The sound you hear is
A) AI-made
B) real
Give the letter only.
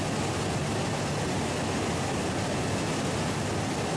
B